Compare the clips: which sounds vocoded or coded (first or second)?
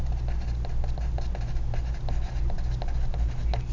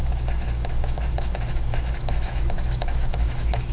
second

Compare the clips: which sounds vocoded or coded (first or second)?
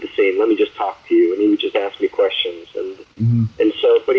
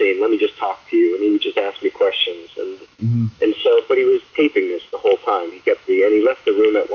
second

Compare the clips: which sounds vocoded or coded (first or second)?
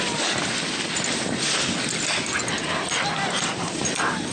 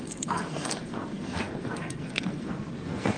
second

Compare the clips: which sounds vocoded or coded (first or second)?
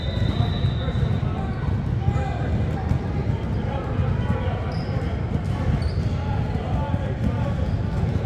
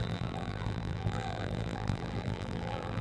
second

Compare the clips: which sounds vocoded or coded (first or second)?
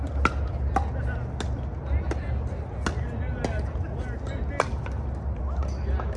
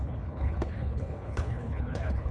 second